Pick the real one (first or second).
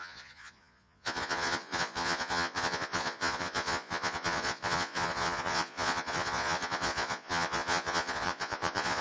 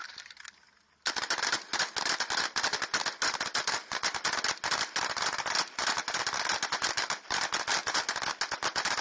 second